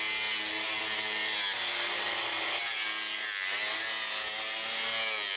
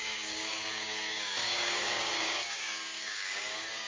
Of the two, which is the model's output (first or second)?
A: second